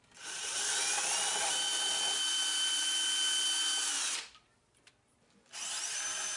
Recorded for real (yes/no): no